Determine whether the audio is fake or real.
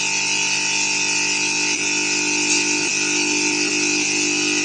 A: real